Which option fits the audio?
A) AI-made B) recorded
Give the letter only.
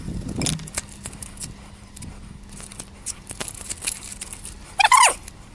B